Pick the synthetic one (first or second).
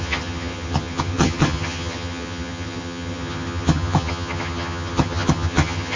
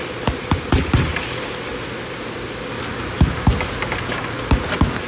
first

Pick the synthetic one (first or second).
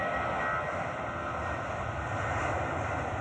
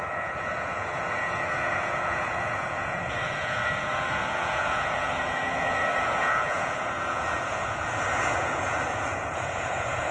second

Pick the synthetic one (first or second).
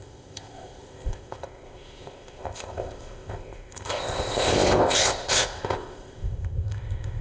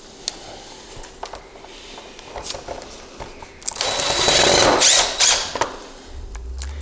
first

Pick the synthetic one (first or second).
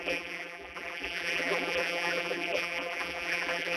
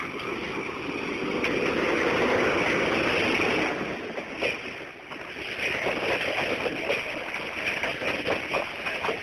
first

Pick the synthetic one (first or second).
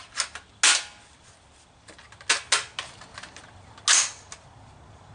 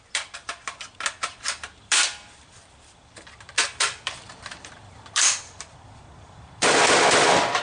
second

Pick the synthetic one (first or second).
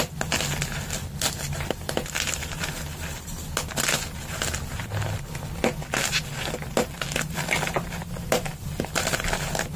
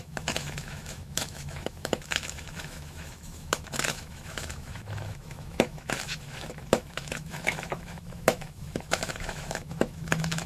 second